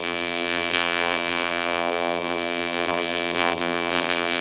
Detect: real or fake fake